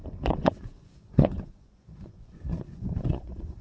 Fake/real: fake